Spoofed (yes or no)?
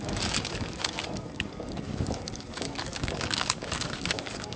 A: yes